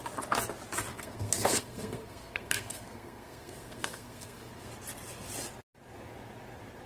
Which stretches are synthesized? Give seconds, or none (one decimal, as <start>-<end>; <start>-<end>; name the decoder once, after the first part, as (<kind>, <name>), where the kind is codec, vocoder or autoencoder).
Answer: 0.9-4.7 (codec, SNAC)